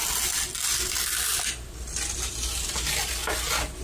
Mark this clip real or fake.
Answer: real